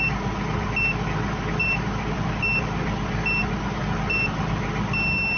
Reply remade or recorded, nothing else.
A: recorded